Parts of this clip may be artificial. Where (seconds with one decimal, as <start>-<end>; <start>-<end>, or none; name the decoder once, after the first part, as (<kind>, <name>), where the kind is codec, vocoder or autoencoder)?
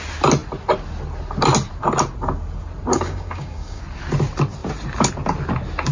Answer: 2.9-3.8 (codec, DAC)